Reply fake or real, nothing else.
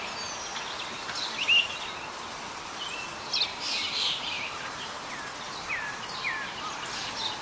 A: real